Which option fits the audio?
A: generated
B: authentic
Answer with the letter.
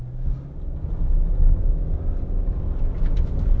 B